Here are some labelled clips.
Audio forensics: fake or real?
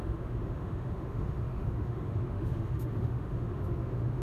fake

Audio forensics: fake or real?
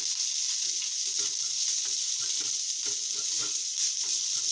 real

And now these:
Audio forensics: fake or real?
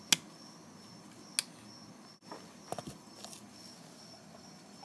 real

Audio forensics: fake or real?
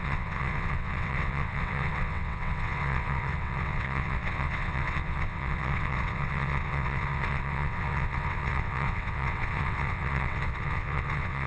fake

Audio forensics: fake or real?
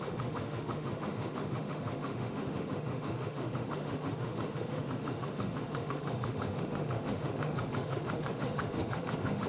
fake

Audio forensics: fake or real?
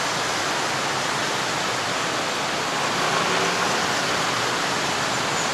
real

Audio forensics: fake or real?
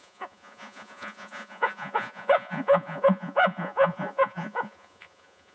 fake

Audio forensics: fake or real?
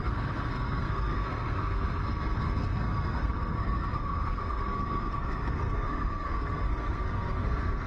fake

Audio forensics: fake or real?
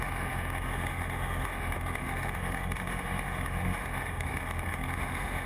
fake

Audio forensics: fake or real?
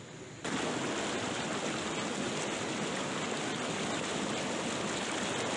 real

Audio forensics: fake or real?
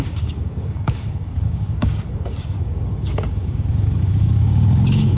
fake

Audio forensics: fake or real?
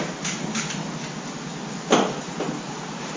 real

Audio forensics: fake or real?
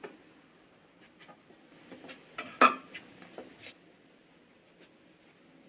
real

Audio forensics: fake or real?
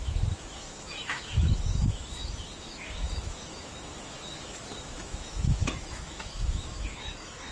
fake